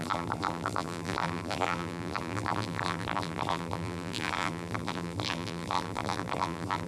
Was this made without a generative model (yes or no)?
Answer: no